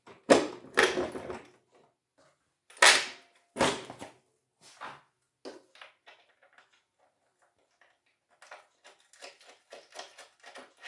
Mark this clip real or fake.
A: real